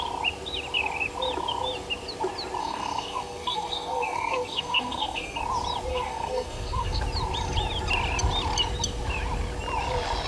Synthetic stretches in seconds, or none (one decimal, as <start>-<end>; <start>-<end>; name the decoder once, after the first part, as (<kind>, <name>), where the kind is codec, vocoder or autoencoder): 2.6-5.4 (codec, SNAC); 5.9-7.0